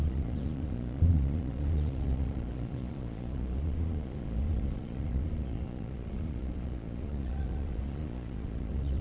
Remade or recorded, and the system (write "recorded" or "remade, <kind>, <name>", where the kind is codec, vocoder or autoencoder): remade, vocoder, Vocos